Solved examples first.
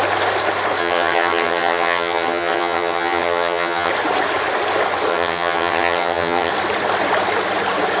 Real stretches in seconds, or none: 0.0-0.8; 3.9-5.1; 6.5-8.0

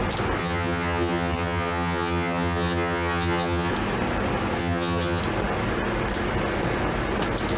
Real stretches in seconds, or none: 0.0-0.4; 3.7-4.6; 5.2-7.6

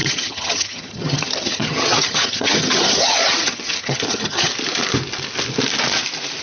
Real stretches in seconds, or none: 4.5-6.4

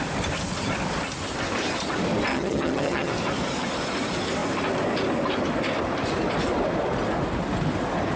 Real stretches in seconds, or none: 0.0-2.3; 3.1-8.2

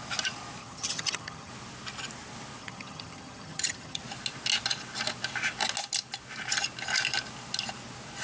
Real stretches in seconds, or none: 0.0-0.6; 1.5-2.6; 4.0-8.2

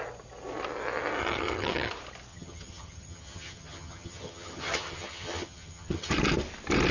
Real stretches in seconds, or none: 0.0-1.2; 1.9-2.3; 6.1-6.9

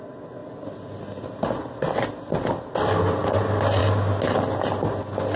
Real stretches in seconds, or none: 0.0-5.4